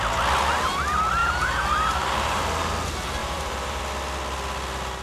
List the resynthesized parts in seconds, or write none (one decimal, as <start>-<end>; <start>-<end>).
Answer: 1.2-2.4; 3.2-3.8